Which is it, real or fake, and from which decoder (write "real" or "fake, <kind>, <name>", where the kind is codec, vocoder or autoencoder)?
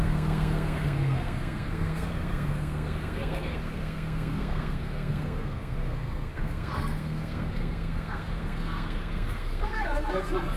fake, codec, SNAC